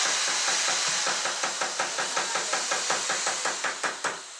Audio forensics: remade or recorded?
recorded